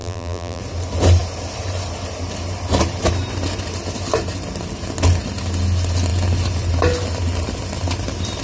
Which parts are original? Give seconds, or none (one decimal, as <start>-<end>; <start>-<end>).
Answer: 0.6-8.4